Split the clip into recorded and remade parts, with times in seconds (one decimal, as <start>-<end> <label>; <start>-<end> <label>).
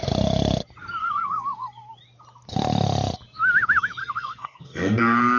0.0-1.0 recorded; 1.0-1.9 remade; 1.9-4.0 recorded; 4.0-5.4 remade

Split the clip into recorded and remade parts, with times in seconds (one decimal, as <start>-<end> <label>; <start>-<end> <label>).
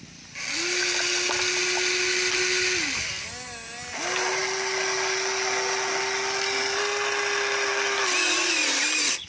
0.0-9.3 recorded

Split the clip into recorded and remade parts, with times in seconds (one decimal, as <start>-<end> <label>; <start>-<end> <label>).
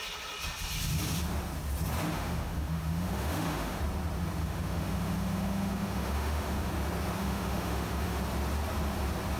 0.0-2.1 recorded; 2.1-3.8 remade; 3.8-4.4 recorded; 4.4-6.7 remade; 6.7-7.2 recorded; 7.2-8.2 remade; 8.2-9.4 recorded